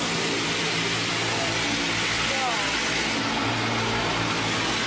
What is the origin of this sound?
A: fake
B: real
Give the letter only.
B